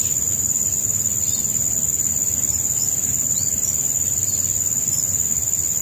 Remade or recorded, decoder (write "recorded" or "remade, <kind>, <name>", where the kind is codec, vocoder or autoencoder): recorded